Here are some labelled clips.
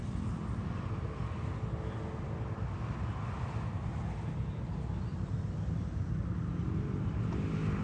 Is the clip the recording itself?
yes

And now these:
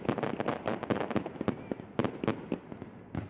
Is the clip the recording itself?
yes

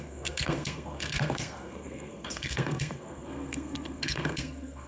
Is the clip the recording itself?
no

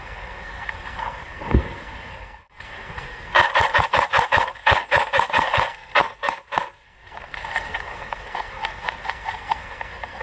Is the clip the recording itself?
no